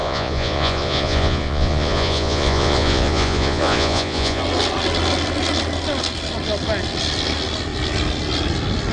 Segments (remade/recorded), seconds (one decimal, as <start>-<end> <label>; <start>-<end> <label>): 0.0-4.4 remade; 4.4-8.9 recorded